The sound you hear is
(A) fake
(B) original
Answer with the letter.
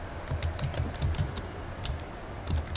A